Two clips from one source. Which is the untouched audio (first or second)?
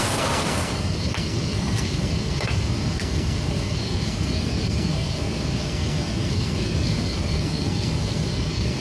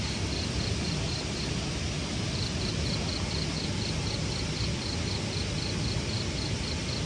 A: second